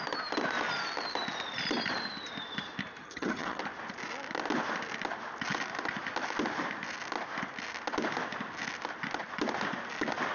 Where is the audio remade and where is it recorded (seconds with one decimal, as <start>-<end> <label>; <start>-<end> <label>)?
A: 0.0-3.0 recorded; 3.0-3.6 remade; 3.6-10.3 recorded